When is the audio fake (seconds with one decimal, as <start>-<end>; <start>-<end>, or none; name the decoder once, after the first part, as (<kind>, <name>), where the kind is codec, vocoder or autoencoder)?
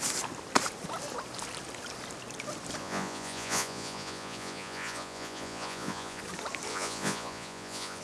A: 2.8-6.2 (vocoder, Vocos); 6.7-8.0